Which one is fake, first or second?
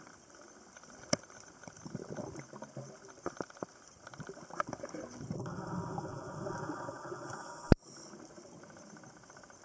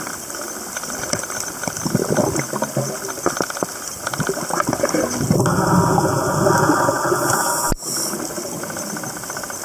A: first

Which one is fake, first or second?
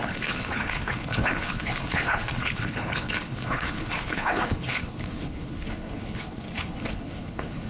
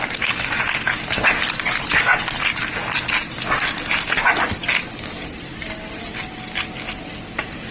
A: first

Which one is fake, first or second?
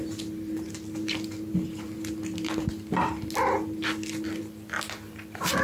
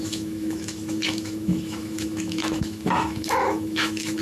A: second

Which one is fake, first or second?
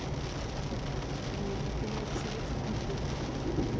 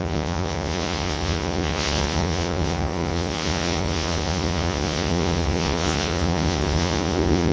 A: second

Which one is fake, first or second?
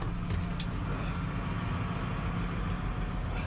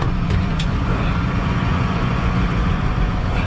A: second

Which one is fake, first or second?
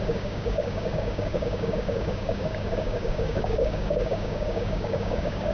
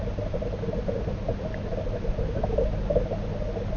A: first